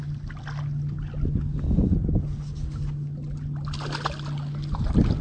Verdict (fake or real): real